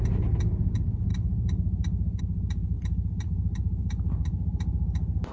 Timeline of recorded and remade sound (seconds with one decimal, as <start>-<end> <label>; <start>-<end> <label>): 0.0-5.3 recorded